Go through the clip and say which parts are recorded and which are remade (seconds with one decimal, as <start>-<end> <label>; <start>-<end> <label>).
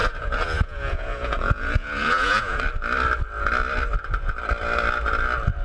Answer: 0.0-2.6 remade; 2.6-5.6 recorded